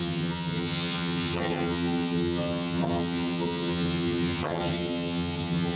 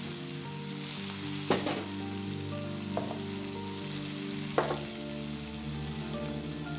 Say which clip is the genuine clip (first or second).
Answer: second